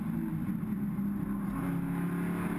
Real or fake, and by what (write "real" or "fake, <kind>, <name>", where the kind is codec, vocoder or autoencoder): real